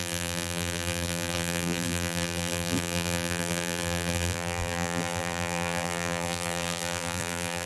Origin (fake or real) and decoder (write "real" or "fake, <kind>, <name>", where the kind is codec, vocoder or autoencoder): fake, vocoder, BigVGAN v2